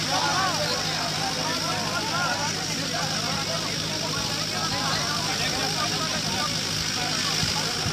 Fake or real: real